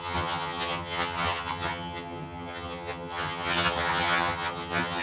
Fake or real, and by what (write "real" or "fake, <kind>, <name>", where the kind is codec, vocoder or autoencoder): fake, vocoder, HiFi-GAN